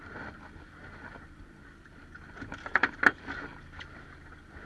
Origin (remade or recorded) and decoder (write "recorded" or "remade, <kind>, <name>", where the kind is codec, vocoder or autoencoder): recorded